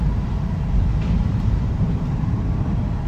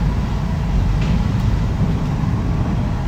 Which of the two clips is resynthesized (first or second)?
first